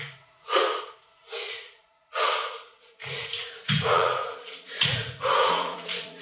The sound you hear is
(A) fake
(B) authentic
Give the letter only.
A